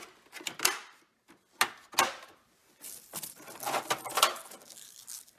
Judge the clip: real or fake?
real